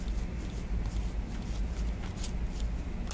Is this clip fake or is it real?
real